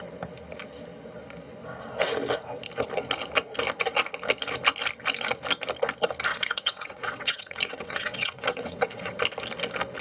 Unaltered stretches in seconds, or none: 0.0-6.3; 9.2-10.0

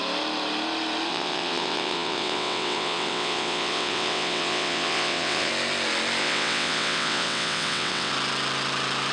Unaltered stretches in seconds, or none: 0.0-1.1; 5.5-6.2; 8.1-9.1

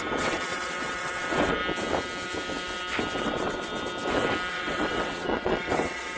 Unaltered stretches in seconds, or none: 1.6-3.2; 3.7-4.5

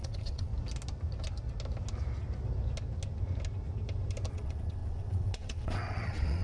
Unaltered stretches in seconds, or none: 0.5-4.3

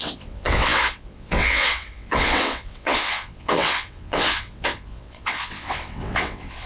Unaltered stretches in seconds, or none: none

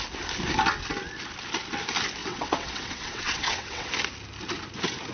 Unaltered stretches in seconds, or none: 0.0-2.2; 3.9-5.1

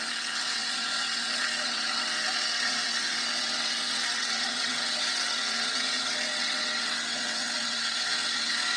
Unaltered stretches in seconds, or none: none

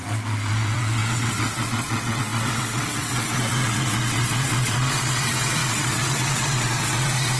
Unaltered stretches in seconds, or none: none